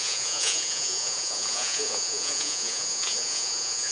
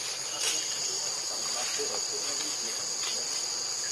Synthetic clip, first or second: first